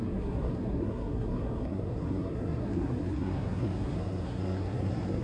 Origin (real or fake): fake